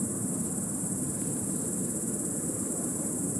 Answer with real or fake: fake